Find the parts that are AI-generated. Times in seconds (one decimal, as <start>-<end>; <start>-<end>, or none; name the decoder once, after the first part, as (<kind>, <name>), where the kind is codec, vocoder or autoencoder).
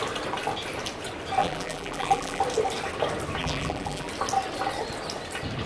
1.4-2.4 (vocoder, BigVGAN v2); 3.4-4.1